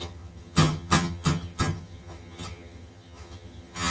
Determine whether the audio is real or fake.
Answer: fake